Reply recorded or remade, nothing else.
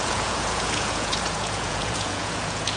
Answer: remade